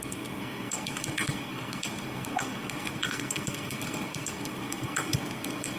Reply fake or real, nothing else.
fake